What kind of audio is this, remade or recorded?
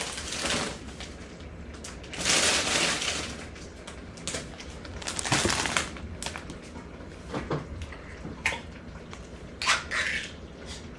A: recorded